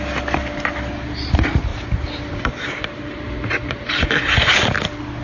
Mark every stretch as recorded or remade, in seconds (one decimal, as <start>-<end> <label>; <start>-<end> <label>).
0.0-1.7 recorded; 1.7-4.2 remade; 4.2-5.2 recorded